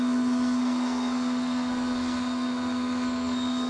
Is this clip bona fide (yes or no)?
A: no